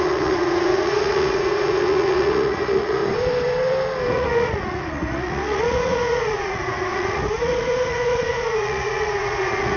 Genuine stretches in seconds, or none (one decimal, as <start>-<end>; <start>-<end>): 3.0-4.1